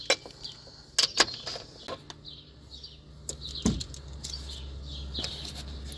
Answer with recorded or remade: recorded